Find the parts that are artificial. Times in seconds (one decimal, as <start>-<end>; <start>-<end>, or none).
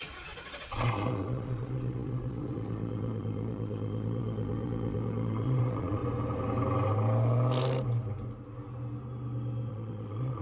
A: 0.0-6.0; 9.7-10.4